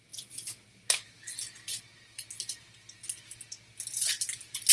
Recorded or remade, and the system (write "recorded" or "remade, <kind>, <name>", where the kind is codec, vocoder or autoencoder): recorded